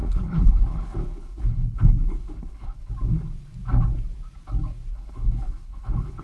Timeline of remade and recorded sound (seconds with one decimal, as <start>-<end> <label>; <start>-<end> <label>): 0.0-2.9 remade; 2.9-4.9 recorded; 4.9-6.2 remade